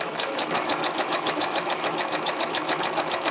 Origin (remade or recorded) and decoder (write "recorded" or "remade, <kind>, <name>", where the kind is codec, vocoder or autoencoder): remade, autoencoder, DAC-VAE